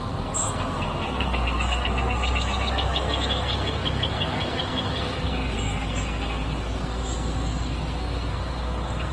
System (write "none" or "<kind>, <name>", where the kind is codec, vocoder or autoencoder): codec, SNAC